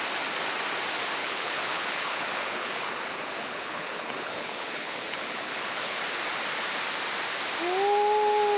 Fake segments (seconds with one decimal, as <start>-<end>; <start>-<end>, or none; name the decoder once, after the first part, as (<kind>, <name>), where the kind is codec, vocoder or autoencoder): 1.2-6.0 (codec, HILCodec)